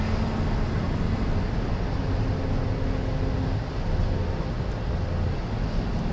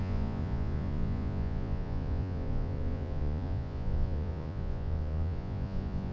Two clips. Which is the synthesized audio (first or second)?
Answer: second